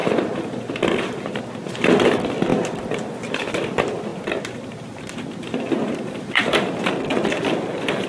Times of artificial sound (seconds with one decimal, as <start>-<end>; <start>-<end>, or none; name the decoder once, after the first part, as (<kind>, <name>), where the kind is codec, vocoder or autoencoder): 0.0-1.4 (vocoder, BigVGAN v2); 4.1-6.9